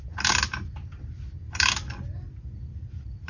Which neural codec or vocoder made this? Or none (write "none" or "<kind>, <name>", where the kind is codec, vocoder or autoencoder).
none